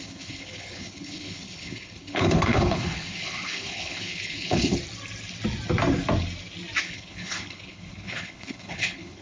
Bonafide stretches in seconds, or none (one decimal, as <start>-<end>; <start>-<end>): 4.7-6.8

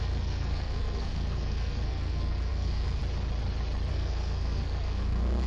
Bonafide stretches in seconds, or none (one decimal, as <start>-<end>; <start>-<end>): 3.0-3.9

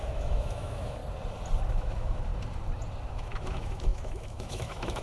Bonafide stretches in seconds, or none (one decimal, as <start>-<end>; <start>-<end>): 1.0-1.7; 2.3-3.1

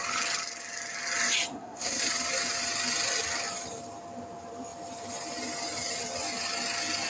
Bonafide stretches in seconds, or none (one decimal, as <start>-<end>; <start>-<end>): 0.0-1.5; 2.0-7.1

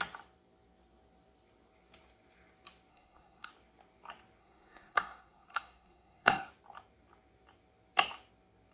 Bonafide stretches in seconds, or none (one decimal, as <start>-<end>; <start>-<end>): 0.0-2.9; 3.5-4.4; 6.5-8.7